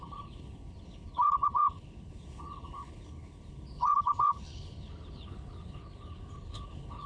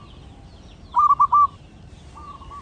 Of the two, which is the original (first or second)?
second